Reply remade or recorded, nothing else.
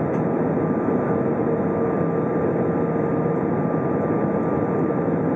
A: recorded